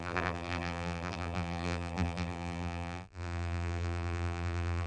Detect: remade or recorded remade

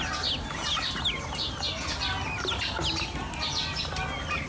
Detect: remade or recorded recorded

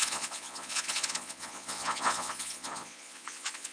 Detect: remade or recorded remade